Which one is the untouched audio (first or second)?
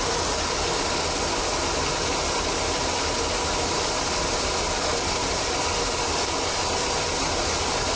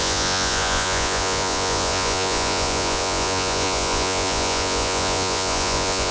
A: first